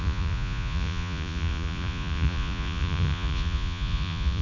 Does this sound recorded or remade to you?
remade